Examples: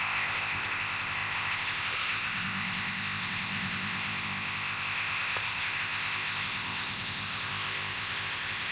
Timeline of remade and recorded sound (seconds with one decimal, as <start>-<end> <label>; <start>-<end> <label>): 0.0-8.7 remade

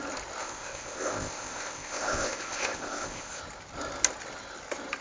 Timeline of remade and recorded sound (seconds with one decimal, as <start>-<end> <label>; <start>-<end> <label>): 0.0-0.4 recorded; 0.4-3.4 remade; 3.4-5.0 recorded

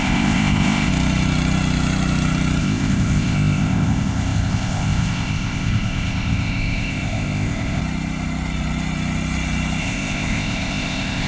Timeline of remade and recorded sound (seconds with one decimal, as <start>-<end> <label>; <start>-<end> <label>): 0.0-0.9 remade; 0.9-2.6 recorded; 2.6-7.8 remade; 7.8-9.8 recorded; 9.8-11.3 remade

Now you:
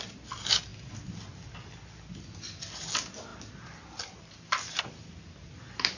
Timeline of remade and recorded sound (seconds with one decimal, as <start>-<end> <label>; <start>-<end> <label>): 0.0-6.0 recorded

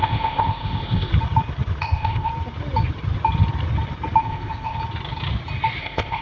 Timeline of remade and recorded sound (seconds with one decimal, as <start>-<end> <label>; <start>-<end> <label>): 0.0-1.1 remade; 1.1-1.8 recorded; 1.8-2.3 remade; 2.3-4.2 recorded; 4.2-4.8 remade; 4.8-5.8 recorded; 5.8-6.2 remade

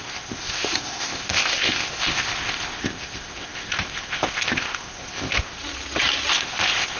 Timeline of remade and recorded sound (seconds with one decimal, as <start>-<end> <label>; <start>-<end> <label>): 0.0-5.6 remade; 5.6-6.3 recorded; 6.3-7.0 remade